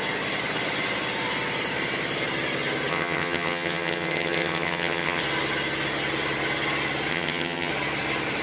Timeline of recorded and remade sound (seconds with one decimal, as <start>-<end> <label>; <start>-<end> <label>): 0.0-2.9 recorded; 2.9-5.2 remade; 5.2-7.1 recorded; 7.1-7.7 remade; 7.7-8.4 recorded